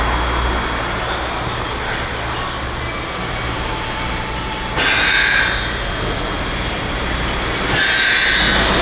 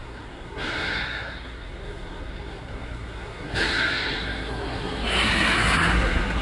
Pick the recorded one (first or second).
first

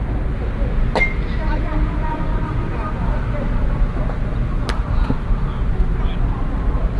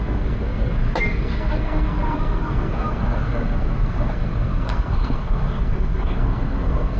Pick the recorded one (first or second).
first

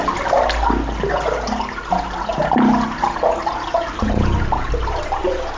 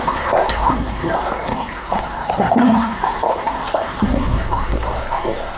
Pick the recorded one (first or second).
first